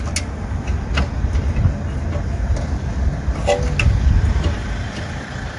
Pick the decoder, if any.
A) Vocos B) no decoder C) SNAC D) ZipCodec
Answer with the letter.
B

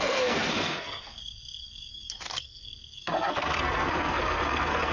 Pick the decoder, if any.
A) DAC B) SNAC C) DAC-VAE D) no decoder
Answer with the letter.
B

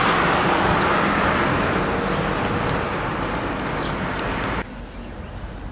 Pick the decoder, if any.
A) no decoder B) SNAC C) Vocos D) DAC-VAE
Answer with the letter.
A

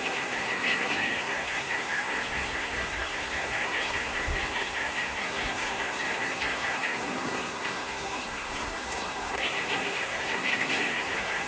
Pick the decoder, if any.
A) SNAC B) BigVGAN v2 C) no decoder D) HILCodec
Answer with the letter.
A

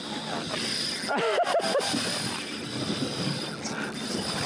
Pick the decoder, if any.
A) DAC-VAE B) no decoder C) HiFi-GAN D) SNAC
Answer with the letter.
B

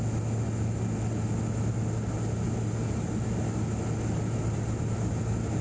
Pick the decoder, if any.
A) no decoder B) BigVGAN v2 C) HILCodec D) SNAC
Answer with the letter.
A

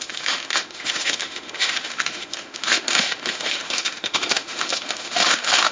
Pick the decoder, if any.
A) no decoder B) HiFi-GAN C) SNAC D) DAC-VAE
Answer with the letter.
D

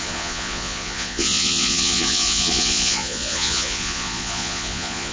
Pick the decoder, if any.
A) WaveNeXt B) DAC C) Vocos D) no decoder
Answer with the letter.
C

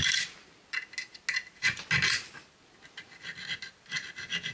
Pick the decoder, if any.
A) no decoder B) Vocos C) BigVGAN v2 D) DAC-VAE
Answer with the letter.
A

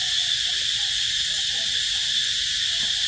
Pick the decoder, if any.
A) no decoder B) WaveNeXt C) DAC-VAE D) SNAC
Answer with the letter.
A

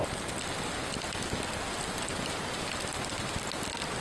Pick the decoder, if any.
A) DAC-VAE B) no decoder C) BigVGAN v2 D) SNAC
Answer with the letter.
B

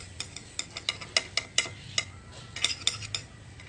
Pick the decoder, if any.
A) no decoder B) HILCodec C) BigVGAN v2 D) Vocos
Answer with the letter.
A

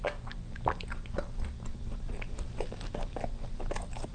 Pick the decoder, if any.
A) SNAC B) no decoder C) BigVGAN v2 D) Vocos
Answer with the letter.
B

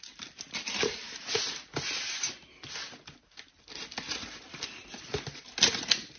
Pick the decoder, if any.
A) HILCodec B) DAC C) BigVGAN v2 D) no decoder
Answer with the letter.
D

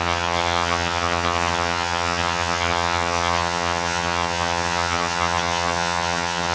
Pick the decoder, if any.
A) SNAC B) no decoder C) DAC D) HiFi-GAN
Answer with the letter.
D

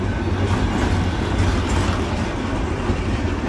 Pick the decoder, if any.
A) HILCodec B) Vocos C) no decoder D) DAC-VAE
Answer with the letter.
C